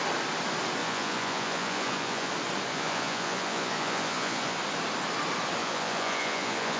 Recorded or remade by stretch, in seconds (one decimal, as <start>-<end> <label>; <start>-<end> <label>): 0.0-0.8 recorded; 0.8-2.3 remade; 2.3-2.7 recorded; 2.7-4.6 remade; 4.6-5.6 recorded; 5.6-6.8 remade

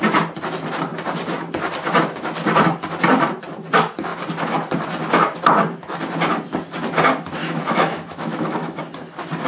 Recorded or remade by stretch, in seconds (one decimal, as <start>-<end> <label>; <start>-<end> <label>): 0.0-7.4 recorded; 7.4-8.8 remade; 8.8-9.5 recorded